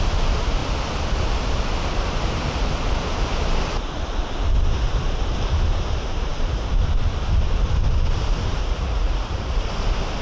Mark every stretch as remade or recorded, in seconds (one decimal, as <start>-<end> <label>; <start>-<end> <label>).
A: 0.0-8.6 recorded; 8.6-9.7 remade; 9.7-10.2 recorded